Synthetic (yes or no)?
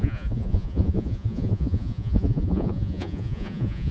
yes